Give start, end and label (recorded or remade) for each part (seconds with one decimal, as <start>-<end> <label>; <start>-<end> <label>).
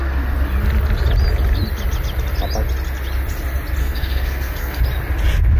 0.0-3.8 recorded; 3.8-4.8 remade; 4.8-5.6 recorded